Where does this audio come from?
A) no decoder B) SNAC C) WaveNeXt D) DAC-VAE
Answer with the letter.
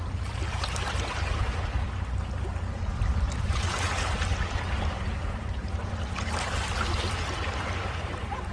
A